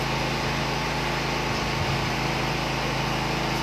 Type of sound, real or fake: real